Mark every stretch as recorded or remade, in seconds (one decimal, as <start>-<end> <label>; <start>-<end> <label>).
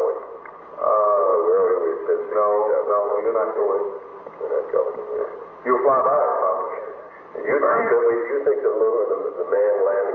0.0-4.1 recorded; 4.1-4.8 remade; 4.8-6.3 recorded; 6.3-7.2 remade; 7.2-8.7 recorded; 8.7-10.1 remade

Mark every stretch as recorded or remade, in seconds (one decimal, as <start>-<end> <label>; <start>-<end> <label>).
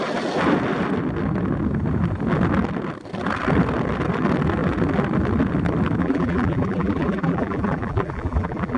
0.0-6.0 recorded; 6.0-8.8 remade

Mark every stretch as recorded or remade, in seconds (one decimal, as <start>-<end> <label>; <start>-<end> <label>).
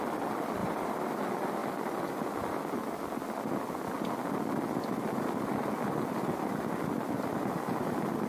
0.0-0.6 recorded; 0.6-1.2 remade; 1.2-8.3 recorded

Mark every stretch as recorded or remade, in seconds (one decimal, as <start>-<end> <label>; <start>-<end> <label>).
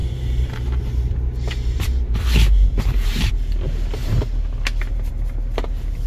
0.0-3.3 remade; 3.3-4.0 recorded; 4.0-5.1 remade; 5.1-6.1 recorded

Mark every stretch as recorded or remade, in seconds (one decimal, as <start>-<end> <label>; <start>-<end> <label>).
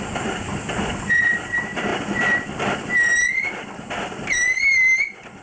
0.0-5.4 remade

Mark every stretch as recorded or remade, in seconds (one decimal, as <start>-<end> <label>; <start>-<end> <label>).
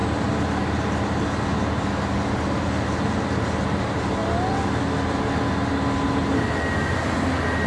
0.0-1.4 remade; 1.4-7.7 recorded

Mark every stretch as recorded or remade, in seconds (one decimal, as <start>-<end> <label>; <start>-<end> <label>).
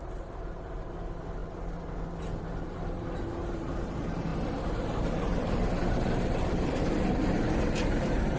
0.0-4.3 remade; 4.3-5.1 recorded; 5.1-8.4 remade